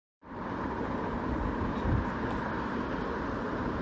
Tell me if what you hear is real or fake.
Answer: real